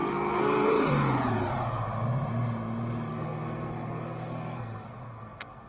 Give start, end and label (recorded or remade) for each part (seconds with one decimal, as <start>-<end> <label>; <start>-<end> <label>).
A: 0.0-0.7 remade; 0.7-3.1 recorded; 3.1-5.7 remade